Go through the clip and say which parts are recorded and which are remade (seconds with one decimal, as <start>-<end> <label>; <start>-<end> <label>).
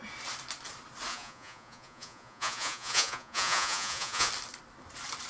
0.0-1.1 recorded; 1.1-4.3 remade; 4.3-5.3 recorded